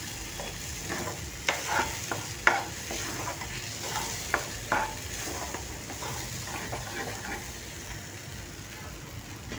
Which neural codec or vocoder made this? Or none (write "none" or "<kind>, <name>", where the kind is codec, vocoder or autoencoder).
none